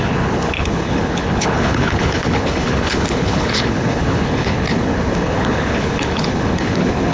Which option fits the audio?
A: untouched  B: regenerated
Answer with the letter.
B